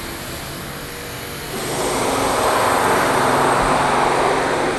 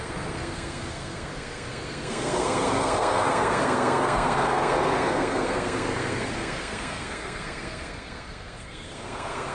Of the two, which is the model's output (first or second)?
second